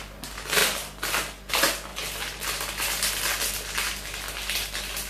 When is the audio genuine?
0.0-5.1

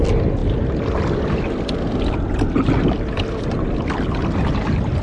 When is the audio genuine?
0.0-5.0

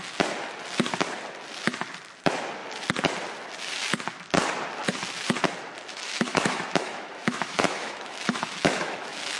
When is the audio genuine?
0.0-5.9

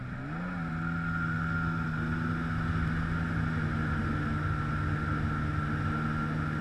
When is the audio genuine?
0.0-6.6

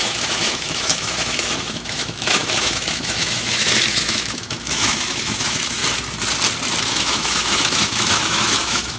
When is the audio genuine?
5.8-6.8